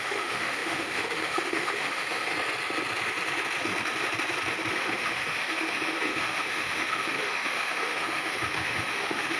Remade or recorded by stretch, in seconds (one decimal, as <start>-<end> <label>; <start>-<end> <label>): 0.0-2.3 remade; 2.3-4.7 recorded; 4.7-9.4 remade